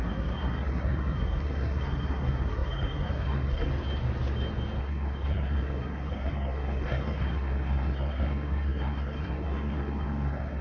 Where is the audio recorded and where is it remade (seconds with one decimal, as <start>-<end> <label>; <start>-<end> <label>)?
0.0-3.7 remade; 3.7-4.8 recorded; 4.8-10.6 remade